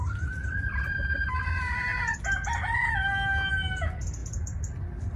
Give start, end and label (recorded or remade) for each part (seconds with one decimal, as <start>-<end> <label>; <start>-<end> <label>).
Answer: 0.0-5.2 recorded